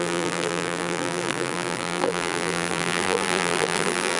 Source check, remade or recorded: remade